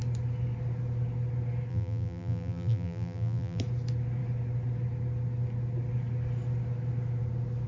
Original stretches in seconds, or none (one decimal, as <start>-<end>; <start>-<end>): 0.0-1.7; 3.6-7.7